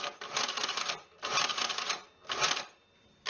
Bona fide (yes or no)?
yes